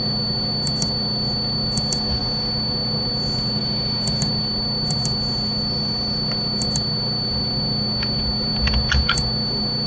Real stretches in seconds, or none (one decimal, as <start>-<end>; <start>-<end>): 0.0-9.9